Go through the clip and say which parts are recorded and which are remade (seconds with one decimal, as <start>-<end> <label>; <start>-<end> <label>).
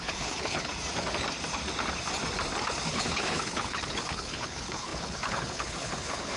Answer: 0.0-0.7 remade; 0.7-2.9 recorded; 2.9-6.4 remade